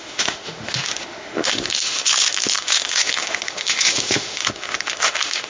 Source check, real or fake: fake